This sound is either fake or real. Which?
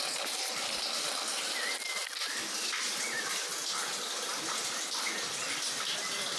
real